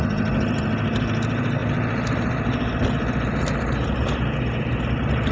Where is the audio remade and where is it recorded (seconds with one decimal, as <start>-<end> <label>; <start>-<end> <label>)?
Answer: 0.0-1.6 recorded; 1.6-4.8 remade; 4.8-5.3 recorded